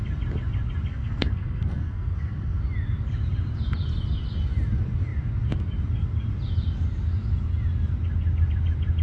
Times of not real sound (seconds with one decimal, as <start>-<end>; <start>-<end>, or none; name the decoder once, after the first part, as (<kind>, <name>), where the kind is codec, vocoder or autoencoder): 0.9-2.6 (codec, SNAC)

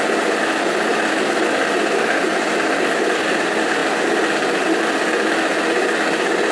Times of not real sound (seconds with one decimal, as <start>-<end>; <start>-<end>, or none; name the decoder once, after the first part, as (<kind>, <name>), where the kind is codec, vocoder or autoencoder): none

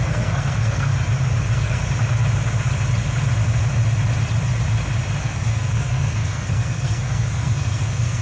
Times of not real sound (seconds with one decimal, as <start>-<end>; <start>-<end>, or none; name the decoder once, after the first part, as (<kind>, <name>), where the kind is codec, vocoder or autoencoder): 0.0-0.9 (codec, SNAC); 1.4-1.8; 5.2-8.2